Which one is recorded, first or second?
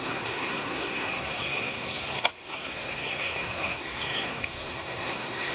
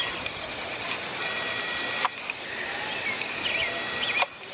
second